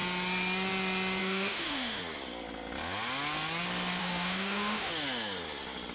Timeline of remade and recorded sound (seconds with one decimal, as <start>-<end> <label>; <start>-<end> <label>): 0.0-1.2 recorded; 1.2-2.0 remade; 2.0-4.0 recorded; 4.0-4.9 remade; 4.9-5.9 recorded